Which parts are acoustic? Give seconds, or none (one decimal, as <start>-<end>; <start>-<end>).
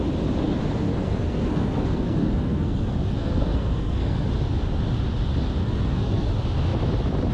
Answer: 0.0-0.9; 4.3-5.6; 6.3-7.3